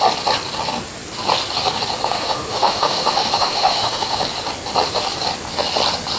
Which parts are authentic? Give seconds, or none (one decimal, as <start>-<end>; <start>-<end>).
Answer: 0.0-2.0; 4.2-6.2